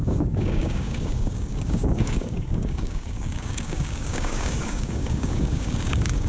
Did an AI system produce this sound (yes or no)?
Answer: yes